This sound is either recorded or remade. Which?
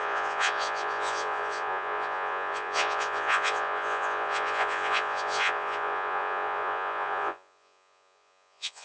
remade